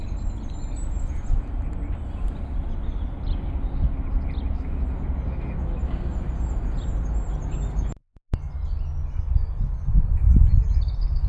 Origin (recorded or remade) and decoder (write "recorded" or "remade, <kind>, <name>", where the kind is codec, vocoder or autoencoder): recorded